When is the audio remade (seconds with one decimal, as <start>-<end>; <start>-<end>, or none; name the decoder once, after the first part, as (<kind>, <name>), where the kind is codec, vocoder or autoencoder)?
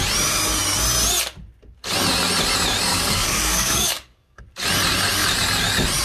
2.9-4.4 (codec, DAC)